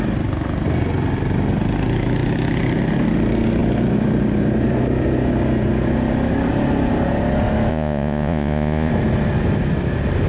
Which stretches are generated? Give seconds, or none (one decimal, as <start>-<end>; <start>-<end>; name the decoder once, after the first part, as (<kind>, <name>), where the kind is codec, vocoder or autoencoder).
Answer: 7.7-8.9 (vocoder, Vocos)